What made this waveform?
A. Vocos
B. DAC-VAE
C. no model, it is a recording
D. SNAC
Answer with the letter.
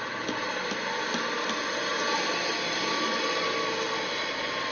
C